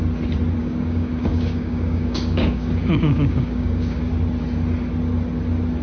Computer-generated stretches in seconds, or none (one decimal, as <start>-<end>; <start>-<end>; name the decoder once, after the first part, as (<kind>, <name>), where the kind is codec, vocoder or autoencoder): 0.6-4.1 (codec, DAC)